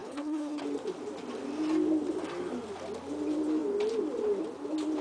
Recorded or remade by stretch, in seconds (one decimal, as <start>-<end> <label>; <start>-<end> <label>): 0.0-0.6 remade; 0.6-5.0 recorded